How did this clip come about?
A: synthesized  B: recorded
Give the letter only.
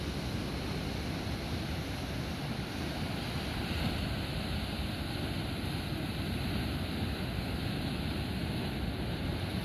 B